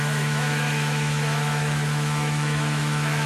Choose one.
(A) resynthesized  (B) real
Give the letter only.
A